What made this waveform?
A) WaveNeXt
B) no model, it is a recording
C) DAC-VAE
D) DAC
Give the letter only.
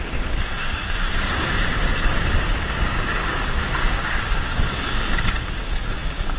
D